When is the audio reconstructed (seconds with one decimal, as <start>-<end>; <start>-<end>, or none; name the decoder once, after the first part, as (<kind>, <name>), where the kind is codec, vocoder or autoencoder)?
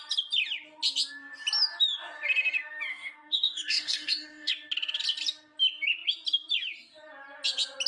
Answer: 2.9-4.5 (codec, DAC)